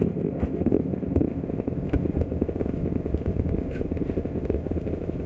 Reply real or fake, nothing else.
fake